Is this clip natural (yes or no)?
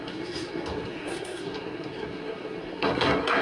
no